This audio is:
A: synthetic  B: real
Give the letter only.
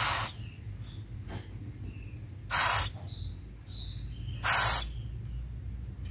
B